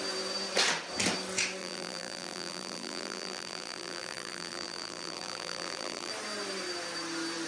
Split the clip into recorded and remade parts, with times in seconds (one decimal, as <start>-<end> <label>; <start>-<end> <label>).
0.0-1.6 recorded; 1.6-6.1 remade; 6.1-7.5 recorded